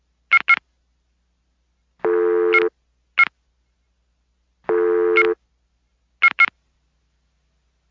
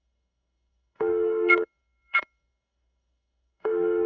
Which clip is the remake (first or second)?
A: second